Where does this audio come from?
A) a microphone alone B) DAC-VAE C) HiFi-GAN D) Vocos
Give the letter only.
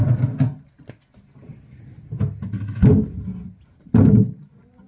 A